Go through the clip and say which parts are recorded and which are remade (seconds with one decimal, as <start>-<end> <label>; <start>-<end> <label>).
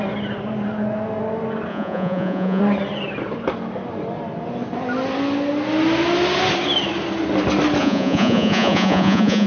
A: 0.0-1.7 recorded; 1.7-2.6 remade; 2.6-7.8 recorded; 7.8-9.5 remade